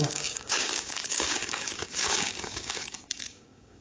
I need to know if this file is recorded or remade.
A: remade